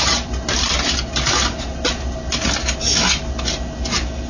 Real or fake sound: real